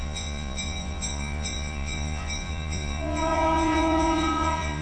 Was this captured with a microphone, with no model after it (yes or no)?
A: no